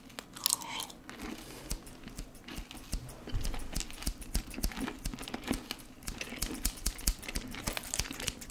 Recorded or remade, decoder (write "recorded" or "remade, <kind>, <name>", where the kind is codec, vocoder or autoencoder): recorded